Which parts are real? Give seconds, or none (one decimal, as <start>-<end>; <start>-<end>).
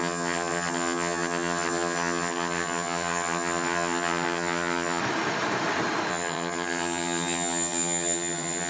5.0-6.1